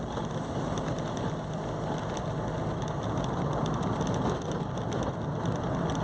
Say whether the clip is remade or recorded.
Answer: recorded